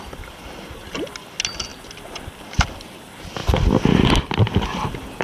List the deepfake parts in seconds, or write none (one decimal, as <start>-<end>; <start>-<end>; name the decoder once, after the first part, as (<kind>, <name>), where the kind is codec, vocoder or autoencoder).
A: none